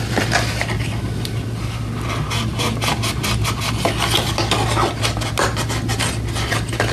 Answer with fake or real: real